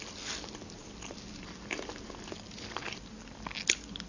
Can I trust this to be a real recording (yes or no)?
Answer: yes